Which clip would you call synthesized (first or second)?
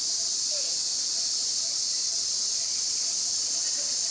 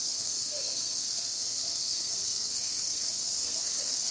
second